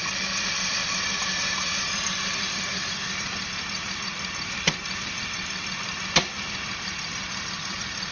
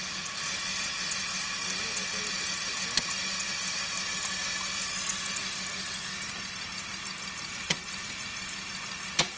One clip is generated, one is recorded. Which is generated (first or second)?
first